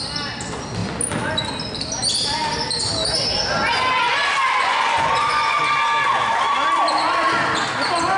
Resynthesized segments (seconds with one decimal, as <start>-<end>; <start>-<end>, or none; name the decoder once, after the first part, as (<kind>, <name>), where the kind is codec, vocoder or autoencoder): 4.6-5.6 (vocoder, Vocos)